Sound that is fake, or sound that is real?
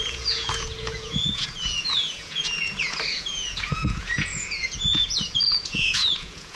fake